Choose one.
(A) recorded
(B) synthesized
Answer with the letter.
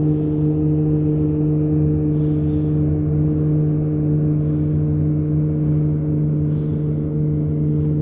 A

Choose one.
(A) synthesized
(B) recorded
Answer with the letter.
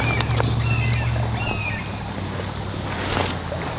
B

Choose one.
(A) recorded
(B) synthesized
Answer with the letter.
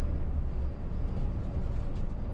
A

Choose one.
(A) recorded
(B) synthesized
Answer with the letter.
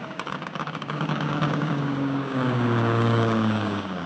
B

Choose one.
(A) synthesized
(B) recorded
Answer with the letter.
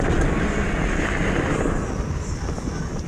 B